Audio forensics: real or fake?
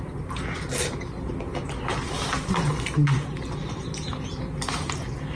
real